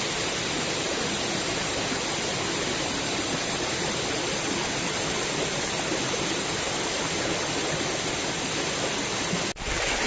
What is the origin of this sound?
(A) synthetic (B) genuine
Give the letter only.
B